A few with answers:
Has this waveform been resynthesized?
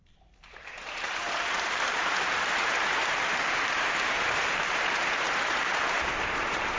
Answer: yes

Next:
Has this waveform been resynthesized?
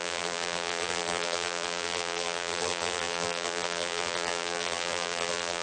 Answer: yes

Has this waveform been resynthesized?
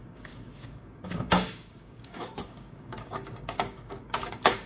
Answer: yes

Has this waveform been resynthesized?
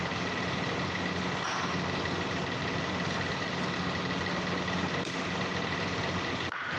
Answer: no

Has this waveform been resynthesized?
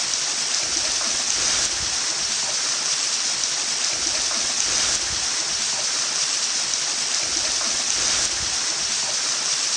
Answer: no